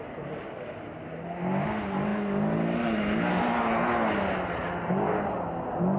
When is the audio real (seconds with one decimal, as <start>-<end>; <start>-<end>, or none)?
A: 0.0-6.0